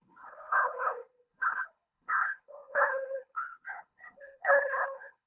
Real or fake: fake